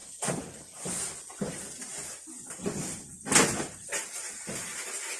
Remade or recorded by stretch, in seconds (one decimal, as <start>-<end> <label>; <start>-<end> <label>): 0.0-5.2 recorded